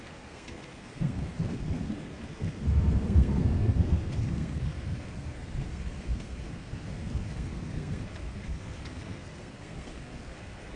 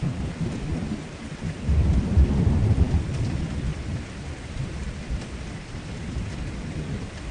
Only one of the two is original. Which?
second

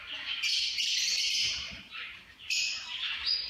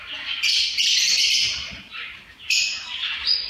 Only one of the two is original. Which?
second